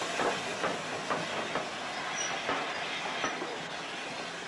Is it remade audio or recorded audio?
recorded